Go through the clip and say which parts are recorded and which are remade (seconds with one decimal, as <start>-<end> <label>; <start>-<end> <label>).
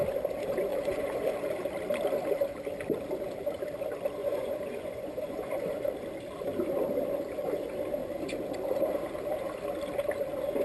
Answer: 0.0-0.7 recorded; 0.7-1.3 remade; 1.3-4.2 recorded; 4.2-5.9 remade; 5.9-10.6 recorded